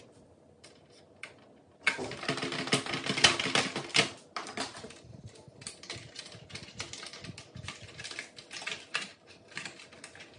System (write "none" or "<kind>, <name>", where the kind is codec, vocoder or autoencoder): none